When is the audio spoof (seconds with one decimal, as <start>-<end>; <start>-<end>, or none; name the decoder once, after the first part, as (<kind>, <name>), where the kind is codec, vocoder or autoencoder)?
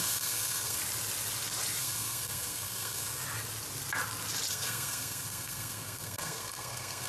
0.0-0.8 (codec, SNAC); 1.8-3.2; 4.5-7.1